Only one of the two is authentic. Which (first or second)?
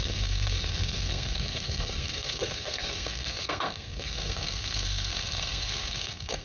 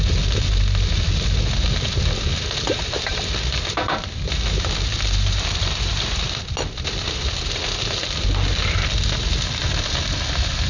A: second